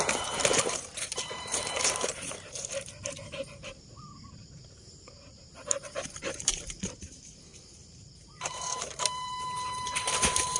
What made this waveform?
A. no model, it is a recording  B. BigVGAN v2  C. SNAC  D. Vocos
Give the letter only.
B